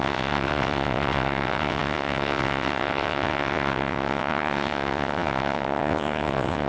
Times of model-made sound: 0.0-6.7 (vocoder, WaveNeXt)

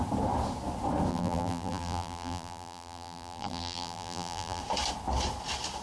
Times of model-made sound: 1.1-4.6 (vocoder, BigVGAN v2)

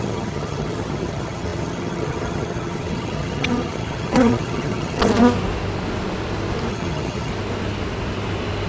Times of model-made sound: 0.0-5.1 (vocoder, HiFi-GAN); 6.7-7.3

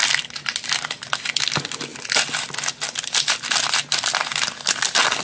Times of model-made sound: none

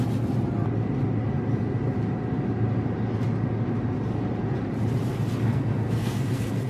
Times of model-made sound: 5.5-6.7 (codec, SNAC)

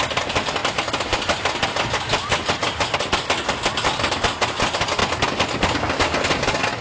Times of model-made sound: none

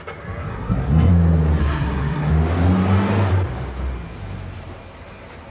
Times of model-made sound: 0.5-1.1 (codec, SNAC); 1.6-2.3